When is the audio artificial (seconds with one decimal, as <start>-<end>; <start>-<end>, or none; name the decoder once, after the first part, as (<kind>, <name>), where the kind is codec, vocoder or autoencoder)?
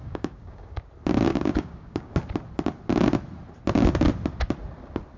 0.0-0.8 (codec, DAC); 1.3-2.1